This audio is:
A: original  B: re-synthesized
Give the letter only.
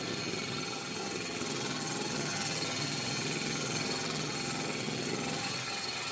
B